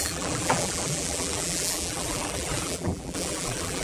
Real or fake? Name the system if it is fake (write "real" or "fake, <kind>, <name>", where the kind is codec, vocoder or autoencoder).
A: fake, vocoder, BigVGAN v2